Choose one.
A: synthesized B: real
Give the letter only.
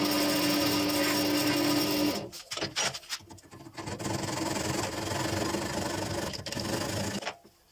B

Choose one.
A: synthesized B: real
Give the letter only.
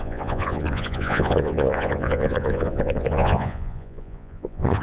A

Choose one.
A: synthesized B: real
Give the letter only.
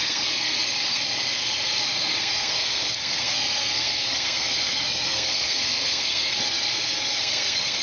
A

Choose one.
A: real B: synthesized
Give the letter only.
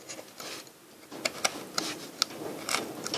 A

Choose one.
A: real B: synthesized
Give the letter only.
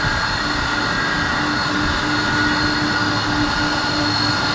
A